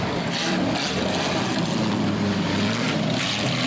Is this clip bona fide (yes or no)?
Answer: no